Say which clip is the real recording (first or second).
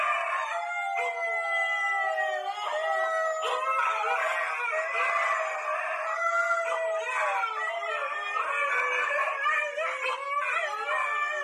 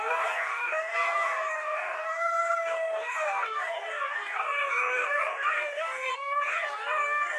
first